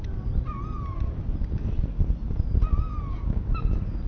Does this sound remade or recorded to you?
recorded